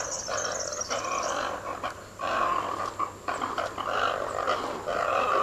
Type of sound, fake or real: real